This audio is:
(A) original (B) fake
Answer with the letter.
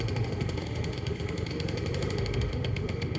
B